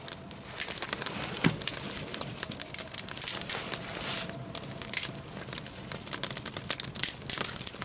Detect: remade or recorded recorded